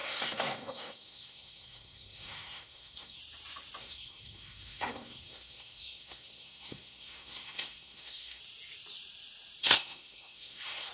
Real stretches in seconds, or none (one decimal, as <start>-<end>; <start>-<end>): 3.2-3.8; 8.4-9.6